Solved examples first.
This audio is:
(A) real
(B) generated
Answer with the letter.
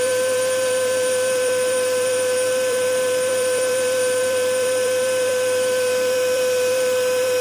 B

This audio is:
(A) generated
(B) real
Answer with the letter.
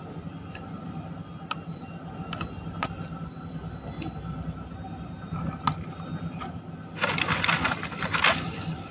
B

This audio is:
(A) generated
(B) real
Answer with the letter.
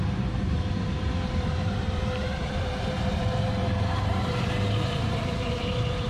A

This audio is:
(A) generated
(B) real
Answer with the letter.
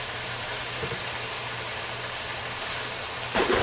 A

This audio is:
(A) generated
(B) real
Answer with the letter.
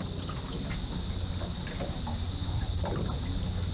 B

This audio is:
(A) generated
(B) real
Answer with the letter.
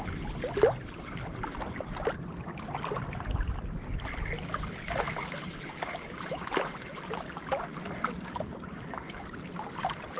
A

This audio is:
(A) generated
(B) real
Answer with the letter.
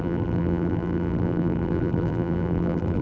A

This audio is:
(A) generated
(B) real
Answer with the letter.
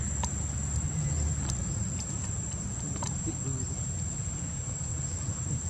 A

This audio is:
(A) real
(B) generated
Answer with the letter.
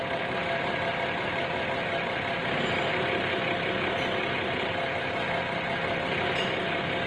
A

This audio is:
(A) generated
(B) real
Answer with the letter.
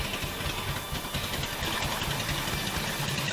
B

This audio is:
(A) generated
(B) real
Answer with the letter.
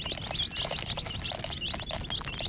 B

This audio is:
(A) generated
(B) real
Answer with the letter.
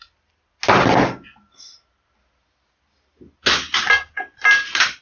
B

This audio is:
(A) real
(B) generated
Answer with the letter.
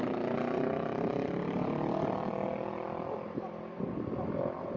A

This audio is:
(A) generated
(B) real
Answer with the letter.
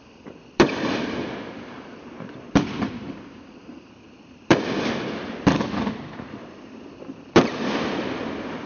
A